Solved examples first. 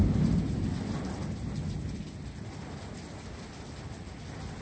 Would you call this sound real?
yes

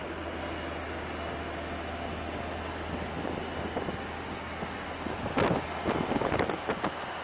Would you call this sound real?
yes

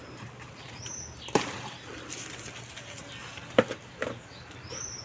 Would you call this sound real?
yes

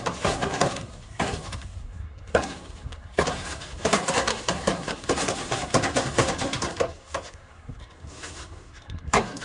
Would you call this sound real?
no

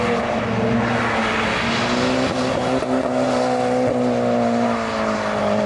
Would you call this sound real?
yes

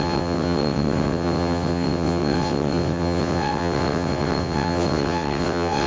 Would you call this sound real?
no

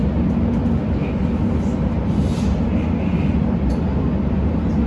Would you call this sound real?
yes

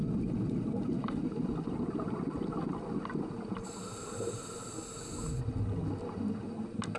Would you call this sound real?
yes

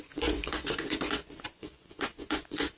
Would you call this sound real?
no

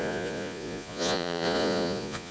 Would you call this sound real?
no